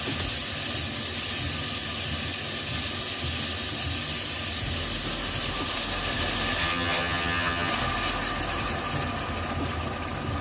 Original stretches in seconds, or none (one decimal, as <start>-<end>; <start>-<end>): 0.0-6.6; 7.7-10.4